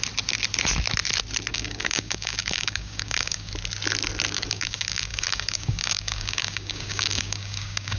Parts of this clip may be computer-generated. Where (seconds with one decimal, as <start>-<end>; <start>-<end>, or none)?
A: 1.5-3.5; 4.5-8.0